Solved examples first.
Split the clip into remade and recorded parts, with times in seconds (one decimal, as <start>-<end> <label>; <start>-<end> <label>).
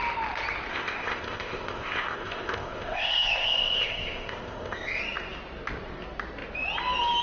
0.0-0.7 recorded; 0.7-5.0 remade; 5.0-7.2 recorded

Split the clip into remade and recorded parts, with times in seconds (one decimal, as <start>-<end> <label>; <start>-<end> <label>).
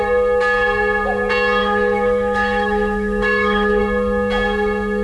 0.0-1.6 recorded; 1.6-3.8 remade; 3.8-5.0 recorded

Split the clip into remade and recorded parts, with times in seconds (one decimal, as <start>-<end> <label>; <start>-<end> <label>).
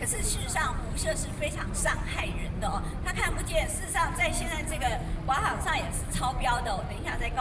0.0-7.4 recorded